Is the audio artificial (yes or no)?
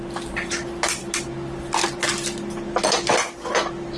no